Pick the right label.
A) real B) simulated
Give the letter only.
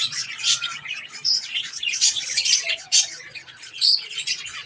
B